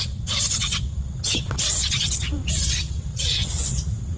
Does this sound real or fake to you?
fake